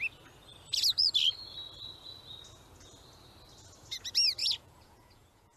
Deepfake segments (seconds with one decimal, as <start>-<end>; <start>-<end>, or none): 4.4-5.6